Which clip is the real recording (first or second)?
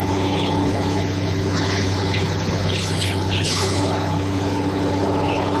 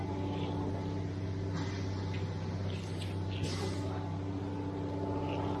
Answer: second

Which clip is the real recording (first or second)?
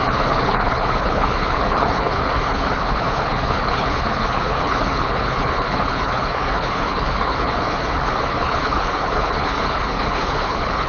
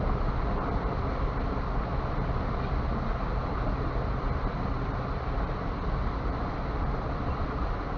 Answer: second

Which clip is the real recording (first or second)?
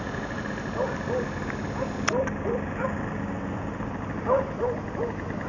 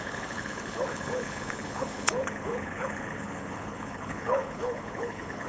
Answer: first